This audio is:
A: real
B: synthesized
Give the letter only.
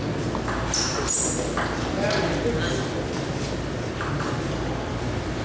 A